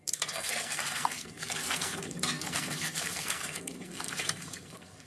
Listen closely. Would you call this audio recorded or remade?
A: remade